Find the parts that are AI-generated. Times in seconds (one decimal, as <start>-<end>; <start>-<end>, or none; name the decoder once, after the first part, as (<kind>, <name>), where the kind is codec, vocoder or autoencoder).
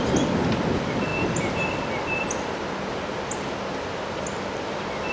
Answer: none